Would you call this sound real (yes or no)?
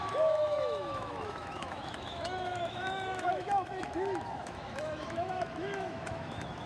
no